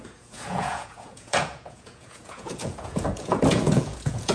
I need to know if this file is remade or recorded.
remade